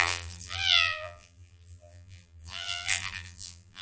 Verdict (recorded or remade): remade